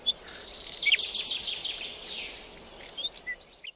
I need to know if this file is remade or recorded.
recorded